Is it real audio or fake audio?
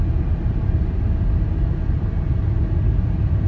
real